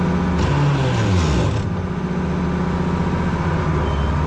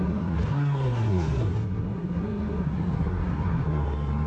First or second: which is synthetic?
second